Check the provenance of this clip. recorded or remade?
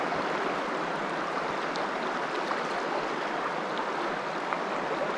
recorded